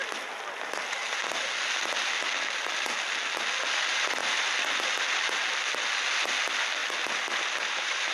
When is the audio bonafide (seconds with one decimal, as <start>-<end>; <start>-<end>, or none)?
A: 0.0-4.2; 4.8-6.8